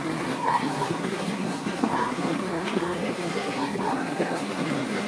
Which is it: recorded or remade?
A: remade